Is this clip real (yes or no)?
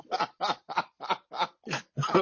yes